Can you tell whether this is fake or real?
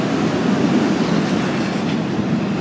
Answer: real